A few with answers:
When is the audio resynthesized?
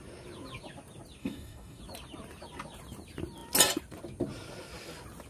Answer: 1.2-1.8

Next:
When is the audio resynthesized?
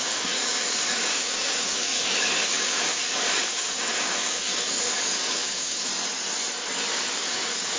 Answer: 0.0-5.9; 6.9-7.8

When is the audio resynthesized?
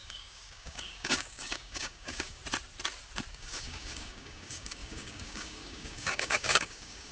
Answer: 0.0-2.4; 3.3-7.1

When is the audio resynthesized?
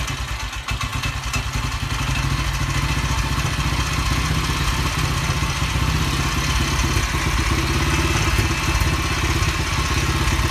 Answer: none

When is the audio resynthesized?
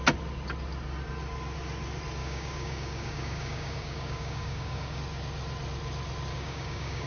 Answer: 2.2-5.0; 6.3-7.1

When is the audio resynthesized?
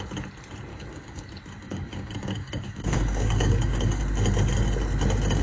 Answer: 0.7-1.2; 1.6-4.0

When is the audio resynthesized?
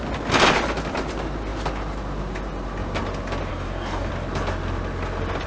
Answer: 3.5-4.1